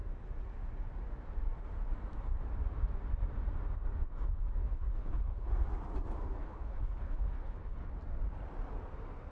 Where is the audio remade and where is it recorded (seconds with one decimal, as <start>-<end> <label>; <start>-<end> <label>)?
0.0-4.6 recorded; 4.6-5.5 remade; 5.5-6.4 recorded; 6.4-7.9 remade; 7.9-9.3 recorded

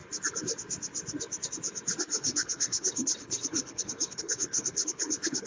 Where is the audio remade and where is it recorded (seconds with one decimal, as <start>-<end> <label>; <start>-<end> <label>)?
0.0-2.1 recorded; 2.1-5.5 remade

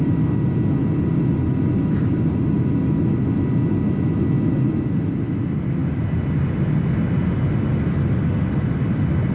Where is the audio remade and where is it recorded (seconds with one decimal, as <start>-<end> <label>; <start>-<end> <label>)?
0.0-9.3 recorded

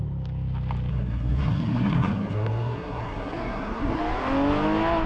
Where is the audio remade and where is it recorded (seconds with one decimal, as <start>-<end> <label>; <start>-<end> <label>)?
0.0-0.9 recorded; 0.9-4.0 remade; 4.0-5.1 recorded

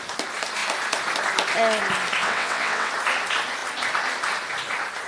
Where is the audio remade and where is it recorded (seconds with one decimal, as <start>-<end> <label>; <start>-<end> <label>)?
0.0-2.2 recorded; 2.2-2.9 remade; 2.9-5.1 recorded

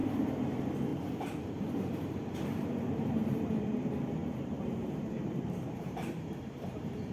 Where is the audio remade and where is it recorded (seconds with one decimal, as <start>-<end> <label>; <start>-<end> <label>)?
0.0-7.1 remade